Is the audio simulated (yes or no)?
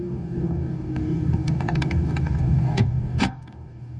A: yes